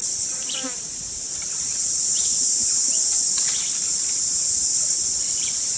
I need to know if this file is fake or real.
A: real